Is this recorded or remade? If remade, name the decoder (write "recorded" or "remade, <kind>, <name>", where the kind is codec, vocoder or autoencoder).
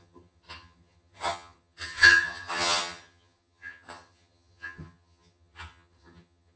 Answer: remade, vocoder, HiFi-GAN